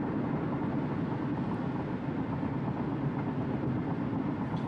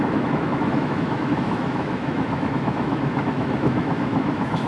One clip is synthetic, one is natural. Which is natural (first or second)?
first